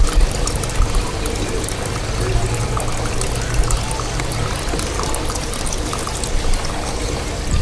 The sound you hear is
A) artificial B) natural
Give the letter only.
B